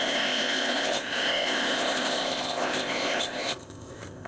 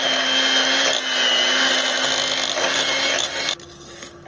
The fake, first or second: first